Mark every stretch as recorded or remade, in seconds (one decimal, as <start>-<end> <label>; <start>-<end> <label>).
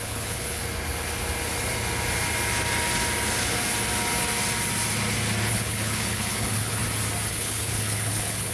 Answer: 0.0-0.6 remade; 0.6-5.5 recorded; 5.5-6.8 remade; 6.8-7.3 recorded; 7.3-8.5 remade